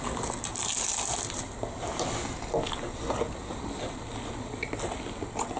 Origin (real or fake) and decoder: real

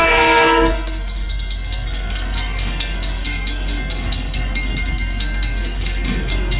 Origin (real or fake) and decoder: fake, codec, SNAC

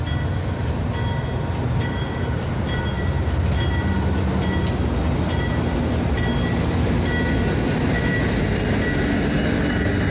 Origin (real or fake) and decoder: real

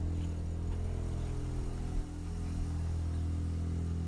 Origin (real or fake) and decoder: real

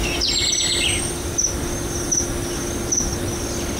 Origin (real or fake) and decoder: real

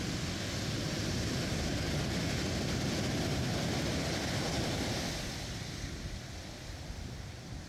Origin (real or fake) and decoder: real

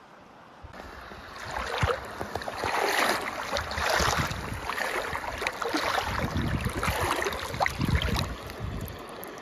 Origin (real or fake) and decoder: real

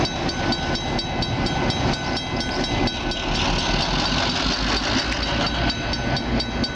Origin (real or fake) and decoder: real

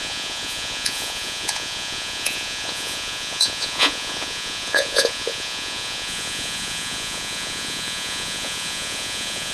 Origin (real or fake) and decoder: fake, vocoder, Vocos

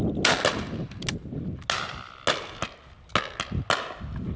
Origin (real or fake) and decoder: real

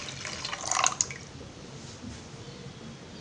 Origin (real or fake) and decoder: real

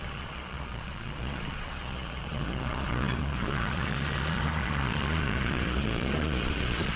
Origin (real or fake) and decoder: fake, vocoder, Vocos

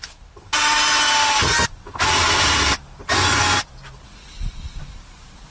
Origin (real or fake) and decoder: real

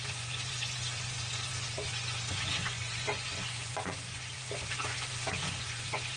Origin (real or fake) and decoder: fake, vocoder, Vocos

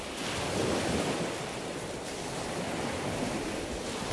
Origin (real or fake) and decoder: real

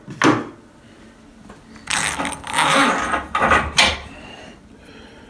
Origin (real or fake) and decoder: real